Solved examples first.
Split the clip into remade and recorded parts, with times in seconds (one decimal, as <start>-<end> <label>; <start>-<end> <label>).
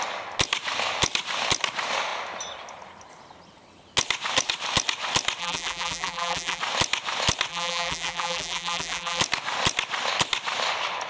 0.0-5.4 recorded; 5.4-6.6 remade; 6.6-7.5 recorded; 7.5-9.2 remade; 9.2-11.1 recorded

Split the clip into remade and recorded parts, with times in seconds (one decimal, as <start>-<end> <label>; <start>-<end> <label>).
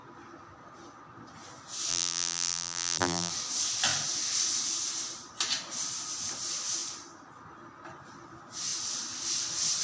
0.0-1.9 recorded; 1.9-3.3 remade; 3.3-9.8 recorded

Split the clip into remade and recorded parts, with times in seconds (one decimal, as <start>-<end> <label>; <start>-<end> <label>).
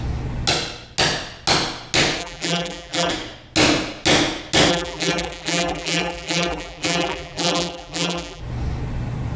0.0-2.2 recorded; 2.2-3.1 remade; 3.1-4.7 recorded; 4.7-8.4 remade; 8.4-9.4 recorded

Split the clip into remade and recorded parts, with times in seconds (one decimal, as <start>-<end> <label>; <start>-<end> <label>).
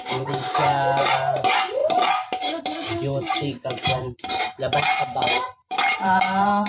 0.0-1.8 remade; 1.8-2.6 recorded; 2.6-6.7 remade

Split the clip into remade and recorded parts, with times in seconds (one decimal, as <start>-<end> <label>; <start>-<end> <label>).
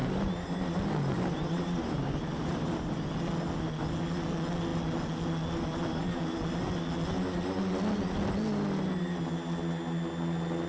0.0-2.9 remade; 2.9-10.7 recorded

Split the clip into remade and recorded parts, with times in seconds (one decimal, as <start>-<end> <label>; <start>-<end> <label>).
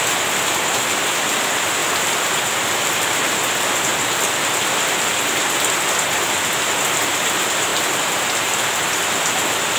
0.0-1.8 remade; 1.8-3.3 recorded; 3.3-3.9 remade; 3.9-7.0 recorded; 7.0-7.7 remade; 7.7-9.1 recorded; 9.1-9.8 remade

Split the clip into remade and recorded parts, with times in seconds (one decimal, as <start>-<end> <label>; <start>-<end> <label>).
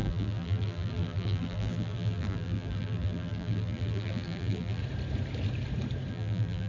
0.0-4.8 remade; 4.8-6.1 recorded; 6.1-6.7 remade